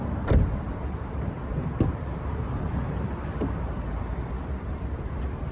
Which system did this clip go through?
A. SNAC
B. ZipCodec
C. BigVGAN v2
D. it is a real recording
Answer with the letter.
C